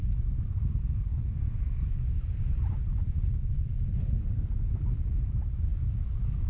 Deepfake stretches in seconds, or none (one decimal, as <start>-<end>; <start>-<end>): none